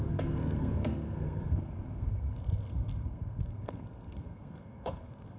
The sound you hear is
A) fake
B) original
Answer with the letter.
A